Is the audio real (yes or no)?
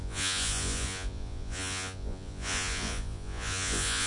no